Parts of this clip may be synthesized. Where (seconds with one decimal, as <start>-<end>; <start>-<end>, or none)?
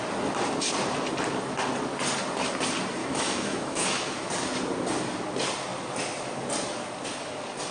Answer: 3.0-4.3